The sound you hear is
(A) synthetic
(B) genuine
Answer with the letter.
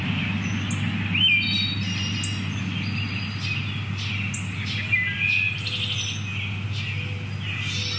B